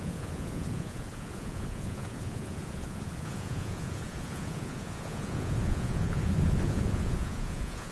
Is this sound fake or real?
fake